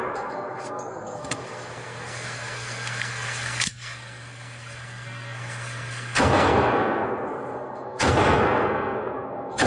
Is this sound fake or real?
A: fake